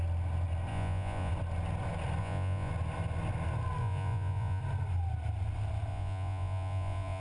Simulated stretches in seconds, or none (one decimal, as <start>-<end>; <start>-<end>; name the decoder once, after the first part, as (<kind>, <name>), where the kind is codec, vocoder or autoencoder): 0.7-1.3 (vocoder, Vocos); 2.2-2.7; 3.8-4.6; 5.9-7.2

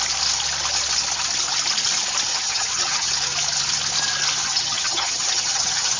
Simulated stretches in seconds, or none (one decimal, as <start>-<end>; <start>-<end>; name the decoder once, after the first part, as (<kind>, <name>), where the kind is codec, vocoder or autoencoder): 2.3-3.1 (vocoder, HiFi-GAN); 4.4-6.0

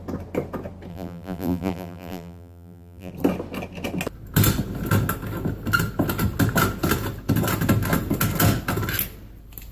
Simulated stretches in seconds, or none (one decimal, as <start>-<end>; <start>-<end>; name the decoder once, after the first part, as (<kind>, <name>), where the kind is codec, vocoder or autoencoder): 0.9-3.1 (vocoder, BigVGAN v2)

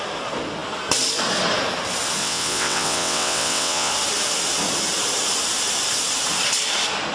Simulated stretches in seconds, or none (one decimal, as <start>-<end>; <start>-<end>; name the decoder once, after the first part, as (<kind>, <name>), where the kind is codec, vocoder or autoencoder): 2.2-3.9 (vocoder, WaveNeXt)